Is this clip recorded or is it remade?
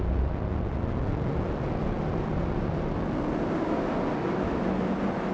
recorded